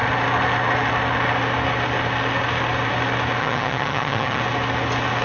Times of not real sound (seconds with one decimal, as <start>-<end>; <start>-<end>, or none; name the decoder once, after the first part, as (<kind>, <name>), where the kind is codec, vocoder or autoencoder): 3.4-4.4 (vocoder, HiFi-GAN)